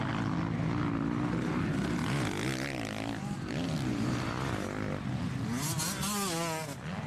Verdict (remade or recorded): recorded